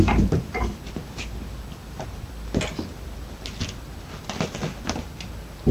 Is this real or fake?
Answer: real